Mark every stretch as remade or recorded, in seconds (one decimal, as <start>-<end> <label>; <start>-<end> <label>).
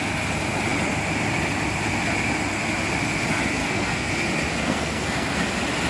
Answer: 0.0-3.6 recorded; 3.6-4.1 remade; 4.1-4.5 recorded; 4.5-5.4 remade; 5.4-5.9 recorded